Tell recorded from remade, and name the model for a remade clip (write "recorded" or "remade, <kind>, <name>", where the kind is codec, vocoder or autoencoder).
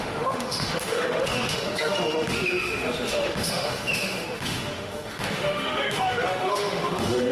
remade, autoencoder, DAC-VAE